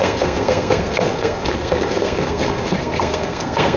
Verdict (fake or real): fake